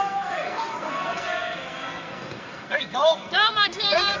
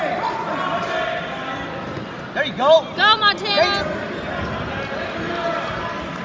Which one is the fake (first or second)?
first